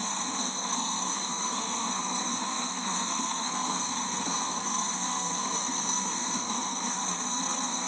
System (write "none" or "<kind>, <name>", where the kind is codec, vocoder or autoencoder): codec, SNAC